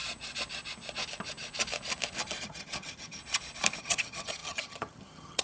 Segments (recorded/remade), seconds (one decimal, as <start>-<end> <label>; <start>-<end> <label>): 0.0-2.4 recorded; 2.4-3.2 remade; 3.2-3.8 recorded; 3.8-5.4 remade